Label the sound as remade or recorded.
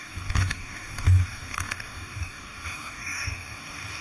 remade